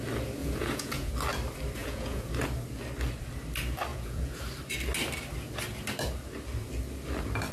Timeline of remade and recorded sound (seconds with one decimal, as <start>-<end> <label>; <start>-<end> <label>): 0.0-0.4 recorded; 0.4-1.1 remade; 1.1-1.8 recorded; 1.8-2.3 remade; 2.3-3.9 recorded; 3.9-4.4 remade; 4.4-7.5 recorded